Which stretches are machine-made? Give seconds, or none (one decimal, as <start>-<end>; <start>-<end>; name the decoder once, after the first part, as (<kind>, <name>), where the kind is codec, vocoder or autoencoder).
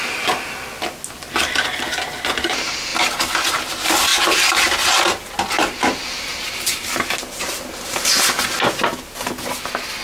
4.1-4.7 (vocoder, BigVGAN v2); 6.3-8.2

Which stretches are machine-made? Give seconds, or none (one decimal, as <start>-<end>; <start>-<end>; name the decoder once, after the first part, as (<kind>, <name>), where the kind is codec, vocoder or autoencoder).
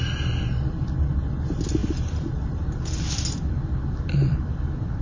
none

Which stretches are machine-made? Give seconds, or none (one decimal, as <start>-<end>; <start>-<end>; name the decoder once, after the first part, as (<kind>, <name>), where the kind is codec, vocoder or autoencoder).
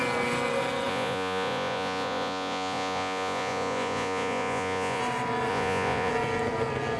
0.9-5.0 (vocoder, Vocos); 5.5-6.1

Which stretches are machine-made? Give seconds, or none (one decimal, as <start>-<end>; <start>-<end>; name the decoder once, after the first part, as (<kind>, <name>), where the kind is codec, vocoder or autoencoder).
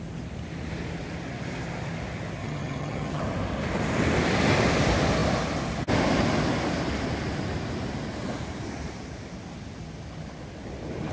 2.4-3.2 (vocoder, HiFi-GAN)